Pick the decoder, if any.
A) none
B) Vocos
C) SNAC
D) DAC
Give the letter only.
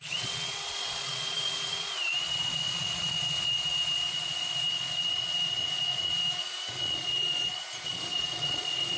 B